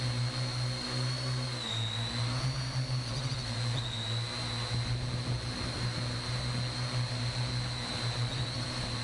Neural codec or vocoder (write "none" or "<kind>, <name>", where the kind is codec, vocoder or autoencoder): none